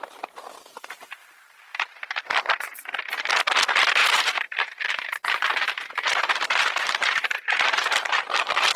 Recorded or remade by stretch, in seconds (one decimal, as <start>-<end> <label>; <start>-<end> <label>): 0.0-1.2 recorded; 1.2-2.3 remade; 2.3-4.0 recorded; 4.0-8.2 remade; 8.2-8.8 recorded